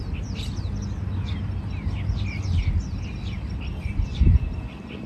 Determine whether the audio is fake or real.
real